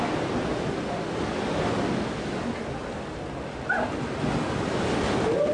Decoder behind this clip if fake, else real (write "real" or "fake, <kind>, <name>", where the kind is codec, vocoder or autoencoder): real